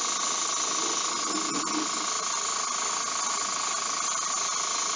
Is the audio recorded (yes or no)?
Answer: yes